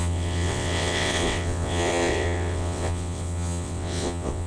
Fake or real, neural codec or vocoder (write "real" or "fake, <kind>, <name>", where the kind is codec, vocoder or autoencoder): fake, vocoder, WaveNeXt